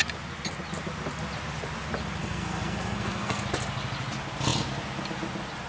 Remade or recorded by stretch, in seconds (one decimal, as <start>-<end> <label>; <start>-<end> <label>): 0.0-2.2 recorded; 2.2-3.4 remade; 3.4-5.7 recorded